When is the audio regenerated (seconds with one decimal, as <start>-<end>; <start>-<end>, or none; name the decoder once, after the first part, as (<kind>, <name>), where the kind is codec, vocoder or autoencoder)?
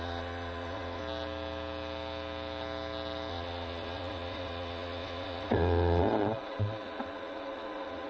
0.0-1.0 (vocoder, Vocos); 3.3-8.1